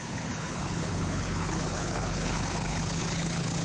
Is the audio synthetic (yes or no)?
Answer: yes